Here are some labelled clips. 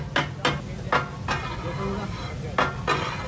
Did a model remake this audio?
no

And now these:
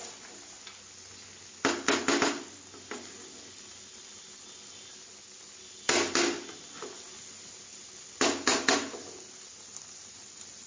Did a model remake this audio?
no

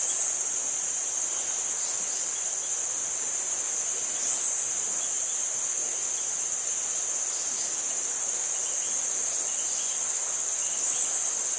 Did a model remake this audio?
no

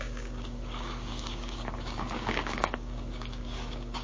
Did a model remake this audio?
yes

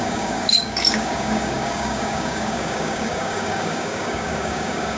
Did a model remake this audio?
yes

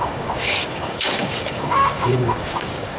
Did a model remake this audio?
yes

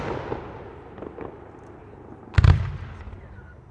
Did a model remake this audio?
no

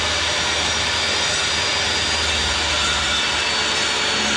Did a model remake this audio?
no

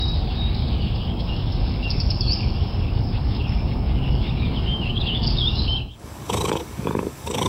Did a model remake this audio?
yes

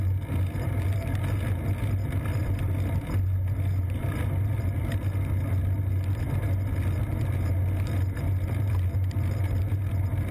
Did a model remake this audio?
no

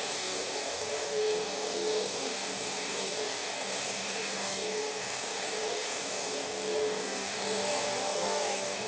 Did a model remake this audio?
yes